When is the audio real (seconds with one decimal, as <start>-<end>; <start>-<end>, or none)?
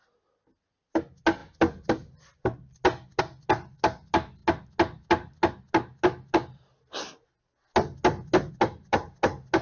0.0-9.6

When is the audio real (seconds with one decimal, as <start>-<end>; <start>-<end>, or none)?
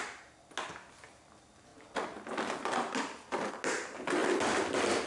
0.0-5.1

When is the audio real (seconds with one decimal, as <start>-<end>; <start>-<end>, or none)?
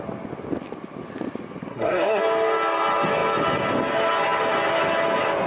0.0-1.7; 2.2-5.5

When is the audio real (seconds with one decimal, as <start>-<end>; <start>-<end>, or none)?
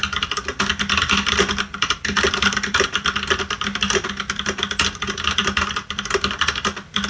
0.0-0.7; 4.1-5.4; 6.5-7.1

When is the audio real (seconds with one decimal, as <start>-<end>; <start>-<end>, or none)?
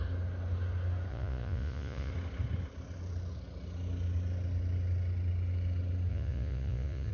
0.0-1.1; 2.1-6.1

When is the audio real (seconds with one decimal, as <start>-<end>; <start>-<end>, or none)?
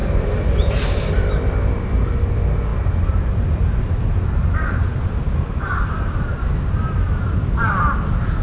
0.7-2.7; 7.7-8.4